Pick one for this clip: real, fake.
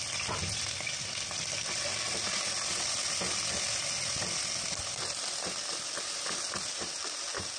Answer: real